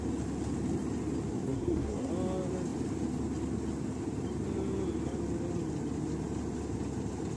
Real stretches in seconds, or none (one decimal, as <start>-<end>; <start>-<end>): 0.0-1.3; 2.1-7.4